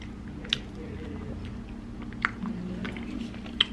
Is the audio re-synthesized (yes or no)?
no